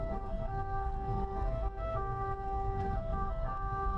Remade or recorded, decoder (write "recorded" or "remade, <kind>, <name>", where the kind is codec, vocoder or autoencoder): remade, codec, SNAC